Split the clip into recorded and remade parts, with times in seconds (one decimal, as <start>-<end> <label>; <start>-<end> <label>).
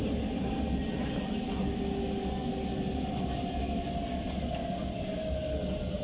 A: 0.0-6.0 recorded